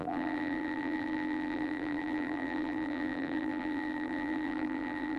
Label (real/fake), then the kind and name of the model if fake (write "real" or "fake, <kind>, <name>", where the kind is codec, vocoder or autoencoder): fake, vocoder, BigVGAN v2